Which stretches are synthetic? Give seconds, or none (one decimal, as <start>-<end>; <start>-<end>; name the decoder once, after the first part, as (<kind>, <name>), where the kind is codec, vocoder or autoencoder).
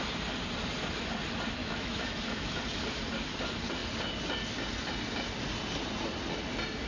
1.6-2.6 (autoencoder, DAC-VAE)